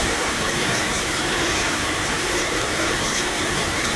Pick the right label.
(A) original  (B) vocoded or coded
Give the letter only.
B